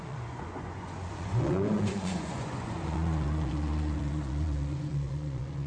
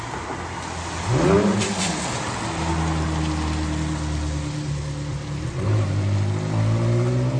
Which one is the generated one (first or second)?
first